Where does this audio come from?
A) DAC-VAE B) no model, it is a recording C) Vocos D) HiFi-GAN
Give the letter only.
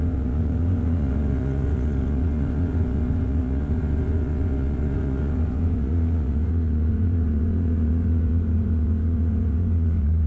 C